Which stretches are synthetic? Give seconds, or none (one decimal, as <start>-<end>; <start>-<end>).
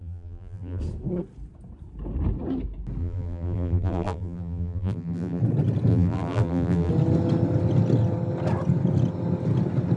0.0-0.8; 3.0-5.4; 5.9-6.9